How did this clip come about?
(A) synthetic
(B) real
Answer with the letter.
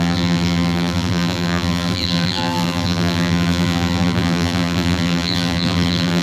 A